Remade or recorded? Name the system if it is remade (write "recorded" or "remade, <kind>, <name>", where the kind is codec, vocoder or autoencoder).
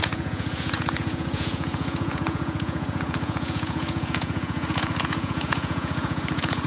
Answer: remade, vocoder, Vocos